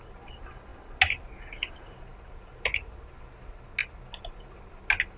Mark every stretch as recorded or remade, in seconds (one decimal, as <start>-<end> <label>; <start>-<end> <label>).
0.0-5.2 recorded